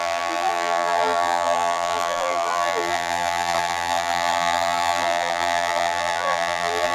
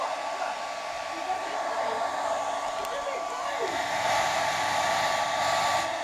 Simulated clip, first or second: first